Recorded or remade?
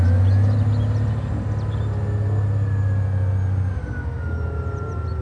recorded